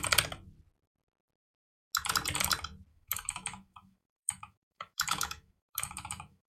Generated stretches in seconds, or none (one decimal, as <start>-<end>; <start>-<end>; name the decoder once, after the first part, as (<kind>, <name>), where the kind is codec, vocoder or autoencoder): 2.9-6.5 (autoencoder, DAC-VAE)